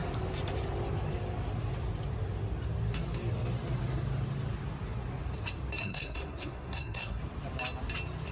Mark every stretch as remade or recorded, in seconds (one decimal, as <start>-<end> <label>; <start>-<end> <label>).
0.0-5.8 recorded; 5.8-7.2 remade; 7.2-8.3 recorded